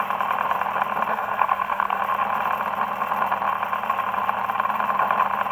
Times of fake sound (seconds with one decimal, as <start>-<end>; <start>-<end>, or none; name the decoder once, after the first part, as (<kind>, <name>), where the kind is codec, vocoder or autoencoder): 1.1-2.0 (codec, SNAC)